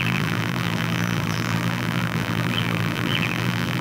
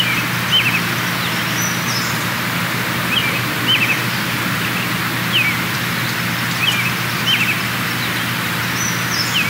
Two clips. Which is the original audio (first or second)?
second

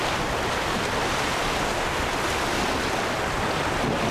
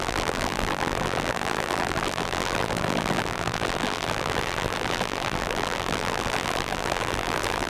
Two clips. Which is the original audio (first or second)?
first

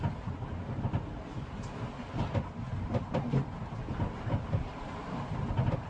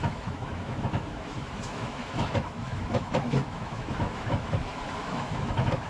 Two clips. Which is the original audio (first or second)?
first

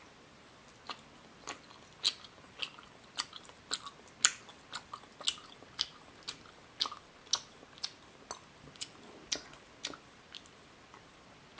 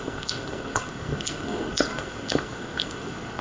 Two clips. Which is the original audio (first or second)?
first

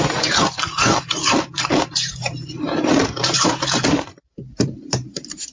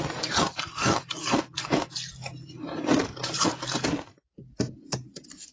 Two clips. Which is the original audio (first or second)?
second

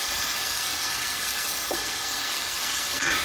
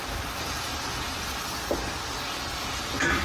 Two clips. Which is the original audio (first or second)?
second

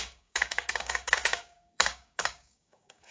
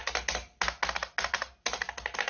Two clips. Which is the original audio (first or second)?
second